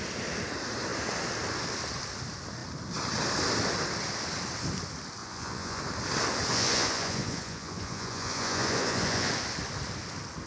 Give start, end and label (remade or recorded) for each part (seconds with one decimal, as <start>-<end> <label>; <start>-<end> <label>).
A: 0.0-5.2 recorded; 5.2-5.8 remade; 5.8-6.5 recorded; 6.5-9.3 remade; 9.3-10.5 recorded